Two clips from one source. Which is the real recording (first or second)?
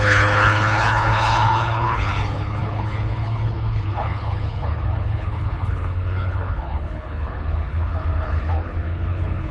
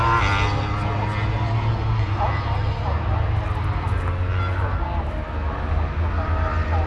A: second